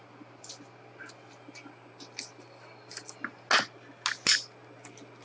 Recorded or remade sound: recorded